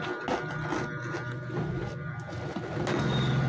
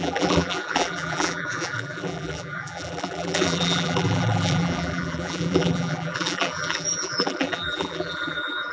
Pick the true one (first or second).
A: first